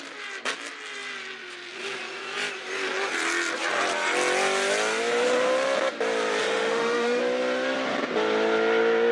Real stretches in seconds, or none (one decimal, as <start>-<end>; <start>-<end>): 0.0-6.4; 7.2-9.1